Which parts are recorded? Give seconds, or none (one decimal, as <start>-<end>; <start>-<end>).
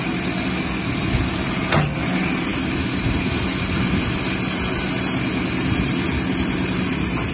0.0-7.3